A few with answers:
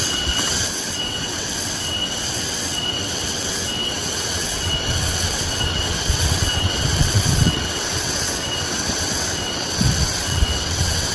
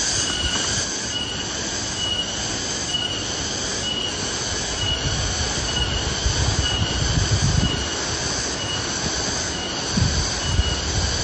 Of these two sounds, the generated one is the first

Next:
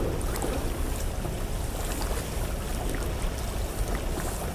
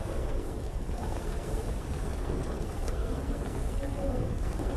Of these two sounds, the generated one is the second